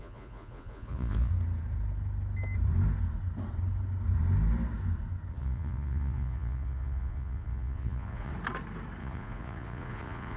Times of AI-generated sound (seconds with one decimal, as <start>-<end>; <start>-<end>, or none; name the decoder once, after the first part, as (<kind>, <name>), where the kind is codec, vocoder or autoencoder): 0.0-1.3 (vocoder, Vocos); 5.3-8.3; 9.0-10.4